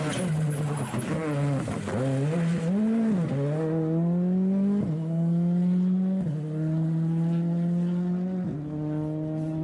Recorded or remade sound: recorded